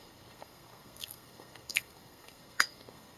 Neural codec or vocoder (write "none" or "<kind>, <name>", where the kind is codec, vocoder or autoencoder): codec, SNAC